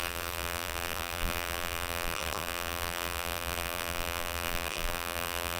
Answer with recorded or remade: remade